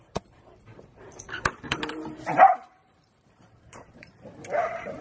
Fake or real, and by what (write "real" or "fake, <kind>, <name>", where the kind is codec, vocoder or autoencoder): fake, vocoder, BigVGAN v2